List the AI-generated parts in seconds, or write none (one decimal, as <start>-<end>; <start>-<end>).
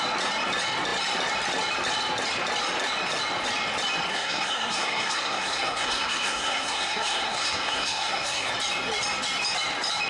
4.1-8.5